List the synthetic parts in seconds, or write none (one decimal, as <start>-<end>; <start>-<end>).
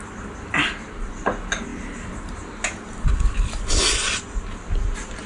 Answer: none